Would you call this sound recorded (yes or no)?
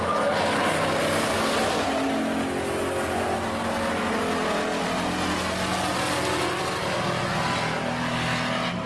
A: yes